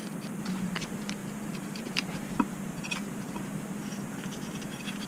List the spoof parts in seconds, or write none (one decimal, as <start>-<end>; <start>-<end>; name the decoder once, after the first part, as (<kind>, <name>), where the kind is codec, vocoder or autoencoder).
0.0-5.1 (vocoder, BigVGAN v2)